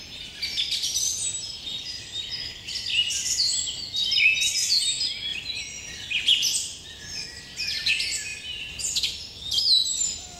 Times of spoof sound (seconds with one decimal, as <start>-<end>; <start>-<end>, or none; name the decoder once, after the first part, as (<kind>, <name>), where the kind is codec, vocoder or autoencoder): none